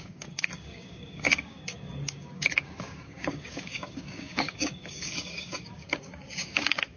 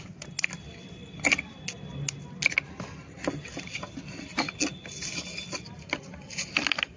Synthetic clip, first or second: first